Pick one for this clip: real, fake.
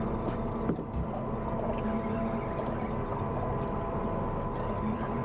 real